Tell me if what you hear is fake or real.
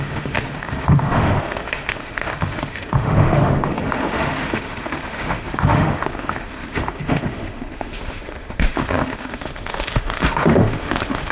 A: fake